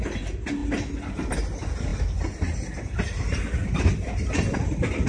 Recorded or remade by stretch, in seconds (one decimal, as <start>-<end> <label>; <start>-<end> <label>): 0.0-5.1 recorded